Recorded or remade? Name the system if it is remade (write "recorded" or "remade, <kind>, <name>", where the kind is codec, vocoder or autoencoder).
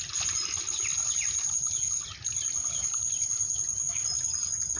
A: recorded